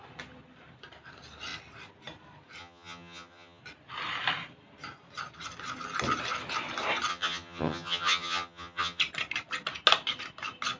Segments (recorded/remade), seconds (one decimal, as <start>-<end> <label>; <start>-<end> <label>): 0.0-2.6 recorded; 2.6-3.6 remade; 3.6-7.1 recorded; 7.1-9.0 remade; 9.0-10.8 recorded

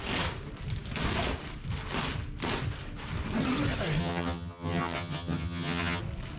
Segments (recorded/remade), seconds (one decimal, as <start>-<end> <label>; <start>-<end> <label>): 0.0-4.0 recorded; 4.0-6.0 remade; 6.0-6.4 recorded

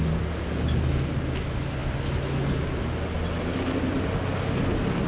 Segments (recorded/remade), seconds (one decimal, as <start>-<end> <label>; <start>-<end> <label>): 0.0-5.1 recorded

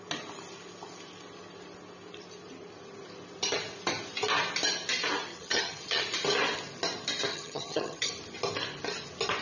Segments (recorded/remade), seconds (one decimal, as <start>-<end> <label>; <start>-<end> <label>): 0.0-5.3 recorded; 5.3-6.0 remade; 6.0-7.3 recorded; 7.3-8.1 remade; 8.1-9.4 recorded

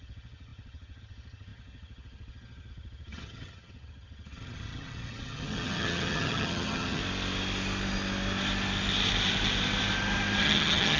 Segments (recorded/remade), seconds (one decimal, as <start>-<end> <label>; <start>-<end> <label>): 0.0-7.0 remade; 7.0-10.4 recorded; 10.4-11.0 remade

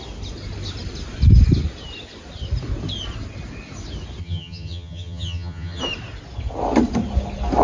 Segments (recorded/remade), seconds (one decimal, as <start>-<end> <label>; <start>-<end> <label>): 0.0-4.2 recorded; 4.2-5.8 remade; 5.8-7.6 recorded

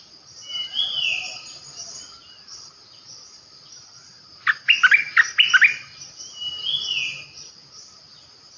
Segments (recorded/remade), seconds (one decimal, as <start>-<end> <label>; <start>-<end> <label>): 0.0-8.6 recorded